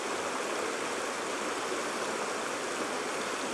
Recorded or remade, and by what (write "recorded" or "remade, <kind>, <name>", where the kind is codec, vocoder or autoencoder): recorded